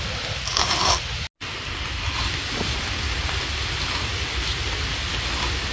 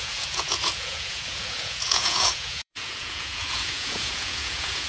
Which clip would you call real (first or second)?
first